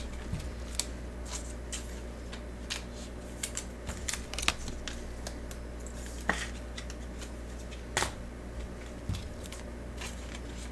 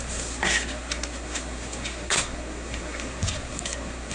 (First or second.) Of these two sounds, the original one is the first